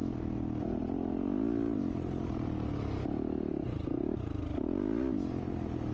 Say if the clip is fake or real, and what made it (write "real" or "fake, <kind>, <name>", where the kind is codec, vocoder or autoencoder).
real